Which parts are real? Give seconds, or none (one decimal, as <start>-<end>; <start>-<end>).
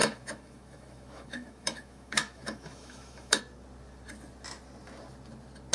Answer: 3.4-5.7